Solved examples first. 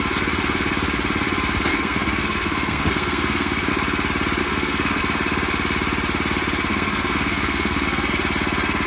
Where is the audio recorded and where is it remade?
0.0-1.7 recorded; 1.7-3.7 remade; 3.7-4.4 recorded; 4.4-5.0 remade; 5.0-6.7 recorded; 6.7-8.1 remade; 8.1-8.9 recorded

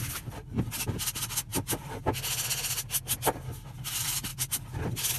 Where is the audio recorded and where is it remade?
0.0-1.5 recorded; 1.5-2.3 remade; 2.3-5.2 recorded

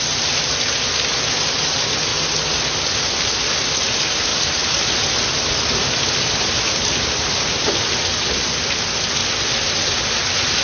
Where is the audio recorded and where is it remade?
0.0-10.6 recorded

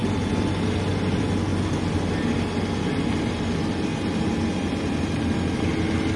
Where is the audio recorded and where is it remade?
0.0-6.2 recorded

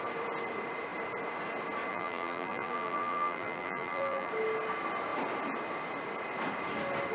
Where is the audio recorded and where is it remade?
0.0-1.9 recorded; 1.9-4.3 remade; 4.3-7.1 recorded

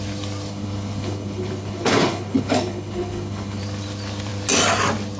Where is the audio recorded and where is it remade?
0.0-0.5 recorded; 0.5-3.6 remade; 3.6-5.2 recorded

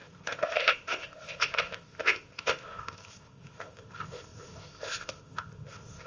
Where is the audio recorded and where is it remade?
0.0-6.1 remade